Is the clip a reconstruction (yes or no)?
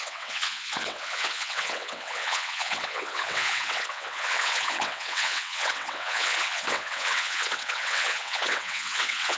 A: yes